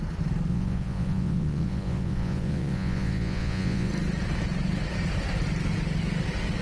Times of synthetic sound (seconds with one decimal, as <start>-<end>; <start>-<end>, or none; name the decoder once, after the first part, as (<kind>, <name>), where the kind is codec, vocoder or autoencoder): 0.5-3.9 (vocoder, Vocos)